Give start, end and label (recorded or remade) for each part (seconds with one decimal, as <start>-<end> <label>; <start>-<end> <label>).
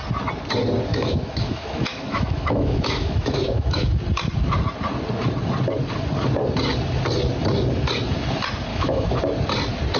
0.0-0.9 recorded; 0.9-3.9 remade; 3.9-8.7 recorded; 8.7-9.2 remade; 9.2-10.0 recorded